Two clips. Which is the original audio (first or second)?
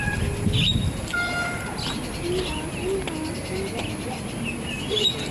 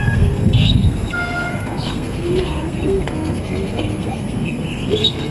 first